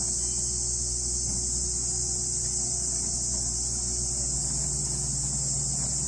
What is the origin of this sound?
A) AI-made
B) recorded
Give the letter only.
B